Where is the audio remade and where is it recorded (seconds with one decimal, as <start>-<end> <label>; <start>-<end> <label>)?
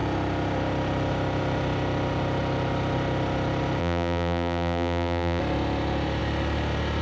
0.0-3.8 recorded; 3.8-5.4 remade; 5.4-7.0 recorded